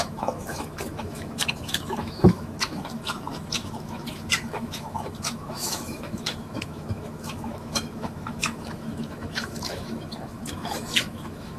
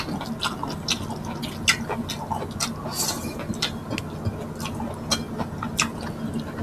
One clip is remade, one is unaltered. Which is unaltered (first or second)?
second